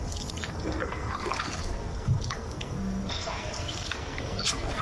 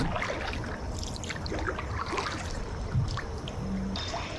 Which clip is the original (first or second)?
second